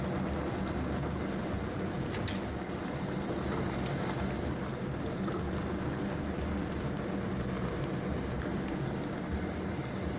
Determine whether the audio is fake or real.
real